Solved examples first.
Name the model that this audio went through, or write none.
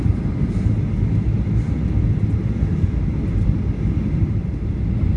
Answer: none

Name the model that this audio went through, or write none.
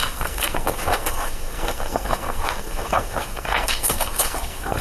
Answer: codec, SNAC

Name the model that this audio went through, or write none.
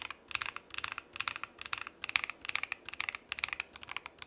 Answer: none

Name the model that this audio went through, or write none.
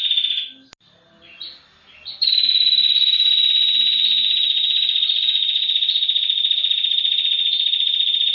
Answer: none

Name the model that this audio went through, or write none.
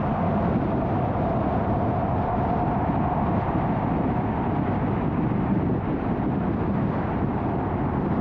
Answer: none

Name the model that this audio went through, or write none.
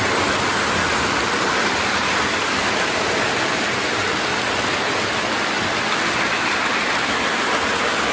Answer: none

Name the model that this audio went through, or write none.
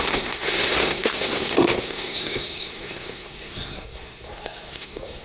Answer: codec, SNAC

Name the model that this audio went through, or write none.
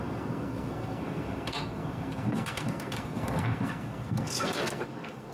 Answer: codec, SNAC